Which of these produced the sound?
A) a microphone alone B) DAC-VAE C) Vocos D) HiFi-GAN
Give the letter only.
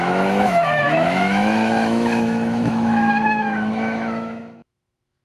B